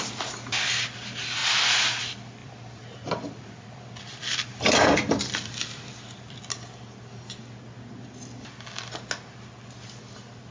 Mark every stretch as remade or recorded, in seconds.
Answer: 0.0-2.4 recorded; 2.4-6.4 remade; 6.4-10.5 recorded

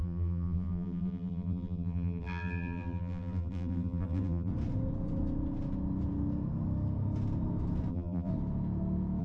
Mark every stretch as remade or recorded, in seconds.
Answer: 0.0-4.5 remade; 4.5-7.9 recorded; 7.9-8.3 remade; 8.3-9.2 recorded

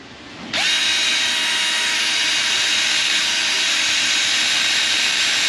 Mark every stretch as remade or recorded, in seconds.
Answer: 0.0-5.5 recorded

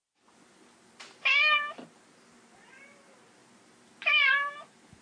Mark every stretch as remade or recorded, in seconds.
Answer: 0.0-3.0 recorded; 3.0-3.4 remade; 3.4-4.3 recorded; 4.3-5.0 remade

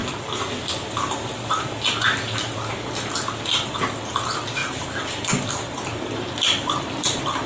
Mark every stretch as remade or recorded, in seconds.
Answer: 0.0-7.5 remade

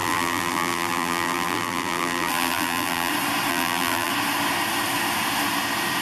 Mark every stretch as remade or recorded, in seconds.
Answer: 0.0-3.1 remade; 3.1-3.5 recorded; 3.5-4.1 remade; 4.1-6.0 recorded

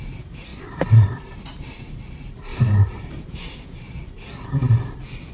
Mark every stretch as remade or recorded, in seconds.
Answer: 0.0-0.5 recorded; 0.5-2.0 remade; 2.0-2.5 recorded; 2.5-3.8 remade; 3.8-5.3 recorded

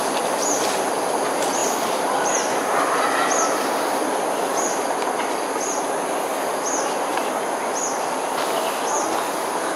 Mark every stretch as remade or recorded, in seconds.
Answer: 0.0-1.6 recorded; 1.6-4.3 remade; 4.3-9.8 recorded